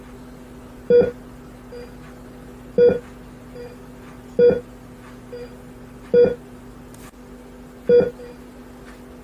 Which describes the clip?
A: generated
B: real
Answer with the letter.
B